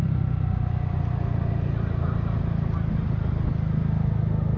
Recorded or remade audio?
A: recorded